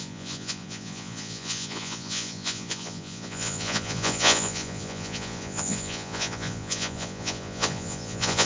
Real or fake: fake